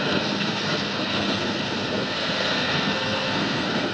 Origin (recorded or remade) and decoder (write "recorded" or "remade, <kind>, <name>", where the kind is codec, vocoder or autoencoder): remade, codec, SNAC